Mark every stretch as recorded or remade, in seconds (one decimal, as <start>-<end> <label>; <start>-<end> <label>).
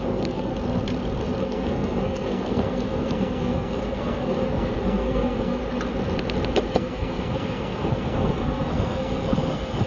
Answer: 0.0-0.5 remade; 0.5-1.4 recorded; 1.4-5.6 remade; 5.6-6.7 recorded; 6.7-9.9 remade